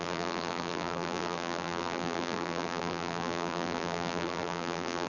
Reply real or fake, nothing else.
fake